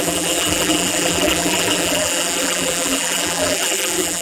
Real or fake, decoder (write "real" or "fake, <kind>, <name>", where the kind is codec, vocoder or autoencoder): fake, vocoder, BigVGAN v2